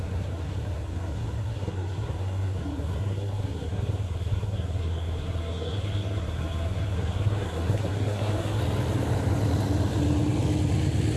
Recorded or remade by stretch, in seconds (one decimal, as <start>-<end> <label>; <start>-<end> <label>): 0.0-8.6 remade; 8.6-11.2 recorded